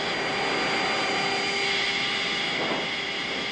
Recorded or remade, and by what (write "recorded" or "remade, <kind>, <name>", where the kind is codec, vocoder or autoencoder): recorded